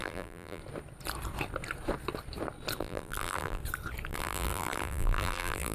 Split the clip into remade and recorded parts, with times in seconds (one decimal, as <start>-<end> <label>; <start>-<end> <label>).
0.0-0.6 remade; 0.6-2.8 recorded; 2.8-3.6 remade; 3.6-4.1 recorded; 4.1-5.7 remade

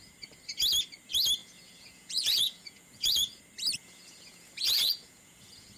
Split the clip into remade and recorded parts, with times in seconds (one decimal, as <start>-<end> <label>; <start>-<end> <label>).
0.0-1.4 recorded; 1.4-3.4 remade; 3.4-3.8 recorded; 3.8-5.8 remade

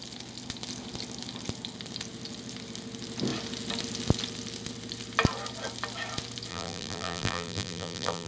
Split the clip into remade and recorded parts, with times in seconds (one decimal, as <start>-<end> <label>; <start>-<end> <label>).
0.0-6.5 recorded; 6.5-8.3 remade